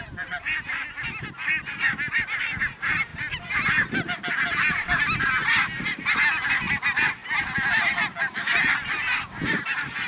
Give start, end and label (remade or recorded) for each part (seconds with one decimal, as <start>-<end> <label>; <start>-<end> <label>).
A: 0.0-10.1 recorded